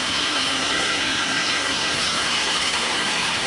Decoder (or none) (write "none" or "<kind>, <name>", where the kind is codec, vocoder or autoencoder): codec, SNAC